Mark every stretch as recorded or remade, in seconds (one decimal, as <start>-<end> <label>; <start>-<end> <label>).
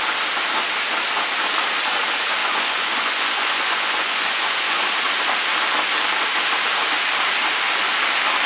0.0-2.4 recorded; 2.4-4.8 remade; 4.8-8.5 recorded